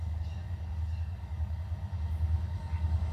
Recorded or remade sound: remade